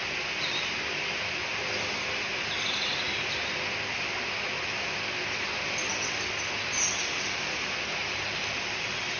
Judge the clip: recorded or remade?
recorded